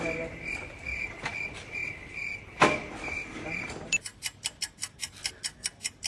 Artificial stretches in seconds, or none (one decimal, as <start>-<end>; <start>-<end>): none